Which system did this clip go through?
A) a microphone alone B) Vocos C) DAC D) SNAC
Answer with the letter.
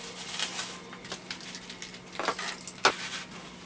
A